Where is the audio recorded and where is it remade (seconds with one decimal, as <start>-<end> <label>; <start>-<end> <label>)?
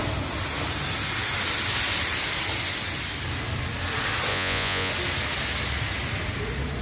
0.0-4.3 recorded; 4.3-4.9 remade; 4.9-6.8 recorded